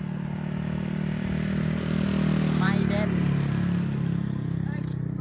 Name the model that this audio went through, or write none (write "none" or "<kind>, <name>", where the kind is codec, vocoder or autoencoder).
none